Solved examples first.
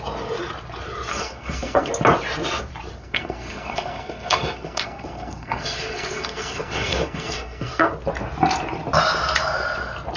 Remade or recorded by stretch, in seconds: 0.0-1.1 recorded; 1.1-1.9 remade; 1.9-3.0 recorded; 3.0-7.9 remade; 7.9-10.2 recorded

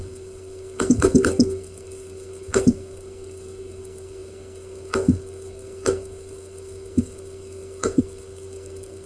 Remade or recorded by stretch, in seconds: 0.0-9.1 remade

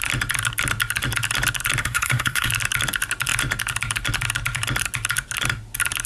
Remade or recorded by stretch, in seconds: 0.0-1.8 recorded; 1.8-2.5 remade; 2.5-6.1 recorded

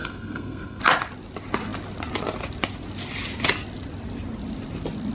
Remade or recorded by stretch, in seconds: 0.0-0.8 remade; 0.8-5.1 recorded

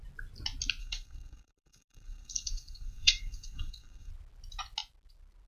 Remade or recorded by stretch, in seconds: 0.0-0.8 recorded; 0.8-4.1 remade; 4.1-5.5 recorded

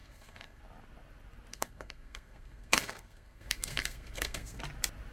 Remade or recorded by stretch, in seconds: 0.0-0.6 remade; 0.6-1.5 recorded; 1.5-4.6 remade; 4.6-5.1 recorded